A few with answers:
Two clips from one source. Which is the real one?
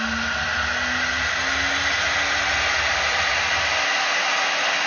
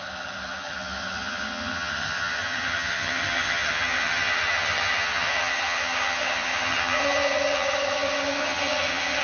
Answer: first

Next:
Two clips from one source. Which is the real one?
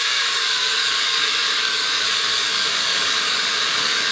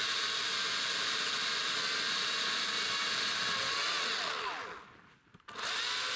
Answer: second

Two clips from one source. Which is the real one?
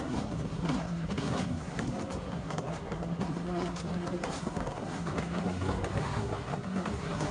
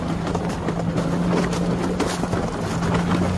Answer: second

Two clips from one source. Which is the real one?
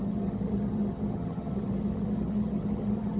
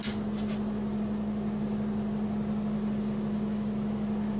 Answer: second